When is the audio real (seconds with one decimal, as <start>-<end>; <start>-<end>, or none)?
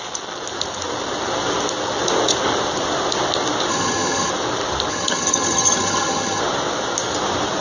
0.0-3.7; 4.3-4.9; 6.4-7.6